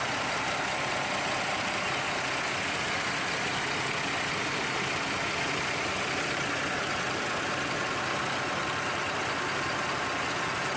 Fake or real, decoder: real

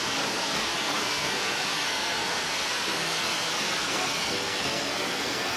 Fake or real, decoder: fake, codec, SNAC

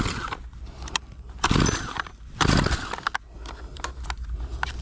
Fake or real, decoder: real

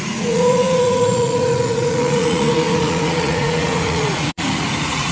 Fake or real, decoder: fake, vocoder, Vocos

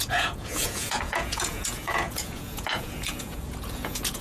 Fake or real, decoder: fake, vocoder, Vocos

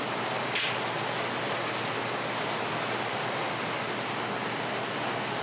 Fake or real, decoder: real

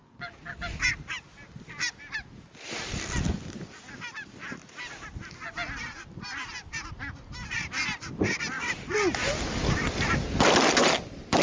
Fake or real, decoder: real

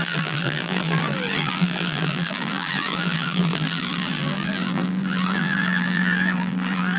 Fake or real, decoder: fake, vocoder, BigVGAN v2